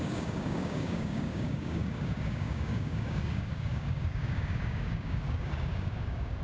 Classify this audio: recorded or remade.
remade